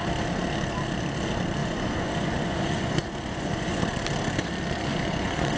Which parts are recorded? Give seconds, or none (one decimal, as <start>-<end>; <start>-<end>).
0.0-1.6; 3.8-4.9